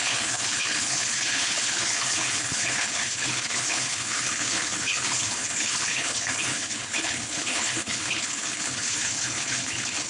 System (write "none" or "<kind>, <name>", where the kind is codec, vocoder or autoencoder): codec, HILCodec